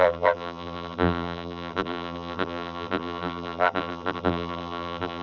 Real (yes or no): no